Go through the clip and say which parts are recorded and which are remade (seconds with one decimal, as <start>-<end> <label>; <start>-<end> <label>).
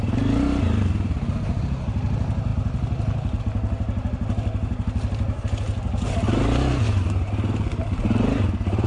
0.0-8.9 recorded